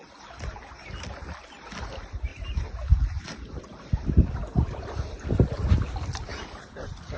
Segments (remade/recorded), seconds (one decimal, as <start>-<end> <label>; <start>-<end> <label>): 0.0-2.3 recorded; 2.3-5.5 remade; 5.5-6.3 recorded; 6.3-7.2 remade